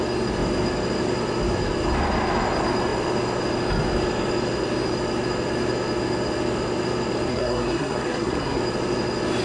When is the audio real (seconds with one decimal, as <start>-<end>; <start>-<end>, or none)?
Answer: 0.0-7.3; 8.6-9.4